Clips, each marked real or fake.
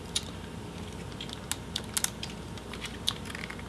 real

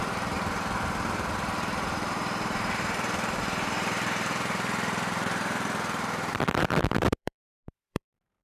fake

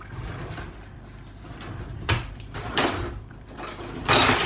fake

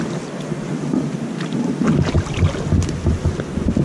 real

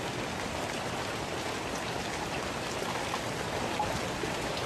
real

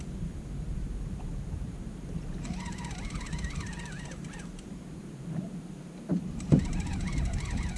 fake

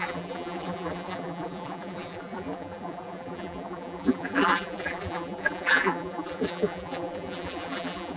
fake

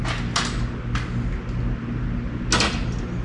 real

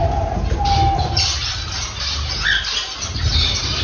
real